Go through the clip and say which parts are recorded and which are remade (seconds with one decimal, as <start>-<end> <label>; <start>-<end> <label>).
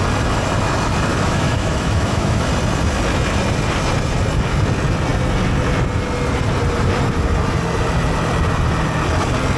0.0-1.1 recorded; 1.1-2.4 remade; 2.4-9.6 recorded